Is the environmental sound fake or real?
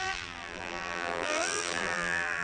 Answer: fake